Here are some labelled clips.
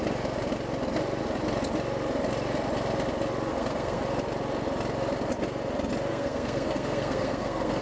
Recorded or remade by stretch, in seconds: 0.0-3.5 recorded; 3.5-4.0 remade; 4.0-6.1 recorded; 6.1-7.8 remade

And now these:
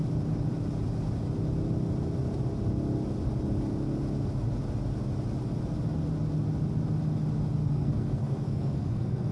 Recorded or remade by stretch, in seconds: 0.0-7.6 recorded; 7.6-9.3 remade